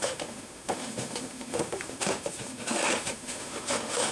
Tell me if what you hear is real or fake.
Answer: fake